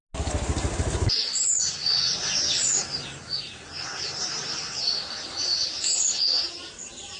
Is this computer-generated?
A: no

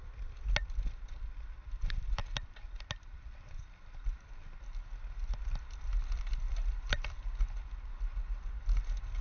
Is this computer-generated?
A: no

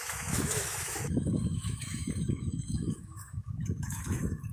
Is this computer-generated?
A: yes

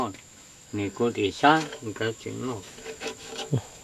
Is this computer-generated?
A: yes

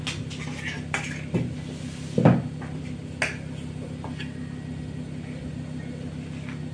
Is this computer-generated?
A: no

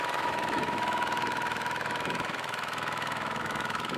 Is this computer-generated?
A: yes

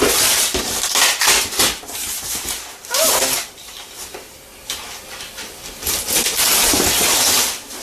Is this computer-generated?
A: no